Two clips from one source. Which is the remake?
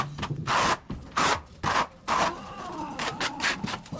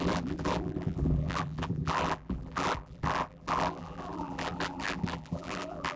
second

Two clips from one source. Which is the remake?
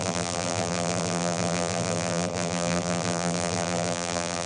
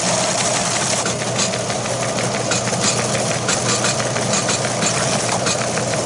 first